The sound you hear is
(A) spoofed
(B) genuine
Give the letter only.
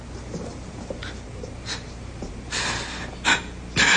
B